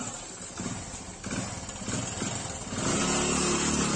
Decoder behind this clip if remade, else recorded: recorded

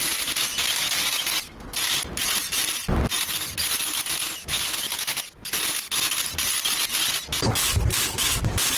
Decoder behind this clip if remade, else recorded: recorded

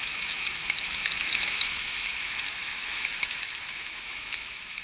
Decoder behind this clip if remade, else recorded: remade, autoencoder, DAC-VAE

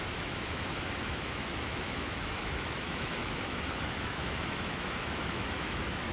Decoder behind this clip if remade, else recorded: remade, autoencoder, DAC-VAE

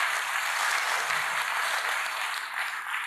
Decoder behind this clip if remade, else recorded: recorded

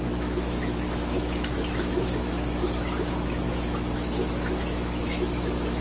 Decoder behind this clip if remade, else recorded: remade, autoencoder, DAC-VAE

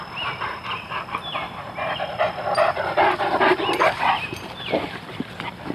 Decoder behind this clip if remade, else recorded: recorded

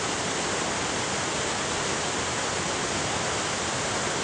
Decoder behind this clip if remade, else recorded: recorded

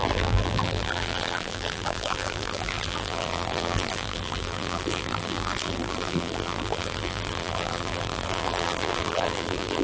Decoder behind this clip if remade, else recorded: remade, vocoder, BigVGAN v2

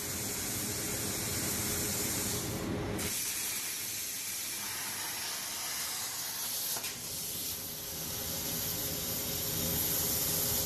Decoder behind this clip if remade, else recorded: recorded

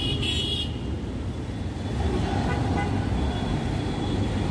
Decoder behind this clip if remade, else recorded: recorded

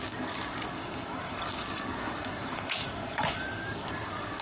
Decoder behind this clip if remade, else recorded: remade, codec, DAC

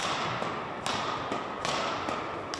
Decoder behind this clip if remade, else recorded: recorded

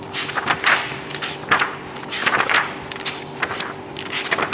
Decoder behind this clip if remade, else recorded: recorded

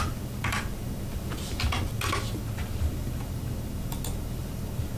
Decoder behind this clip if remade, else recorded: recorded